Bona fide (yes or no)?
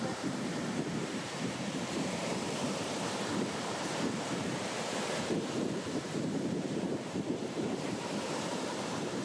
no